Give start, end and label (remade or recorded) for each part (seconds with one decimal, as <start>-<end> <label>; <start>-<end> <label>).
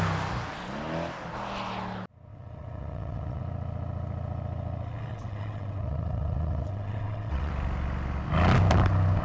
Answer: 0.0-2.3 recorded; 2.3-3.4 remade; 3.4-5.1 recorded; 5.1-7.5 remade; 7.5-9.2 recorded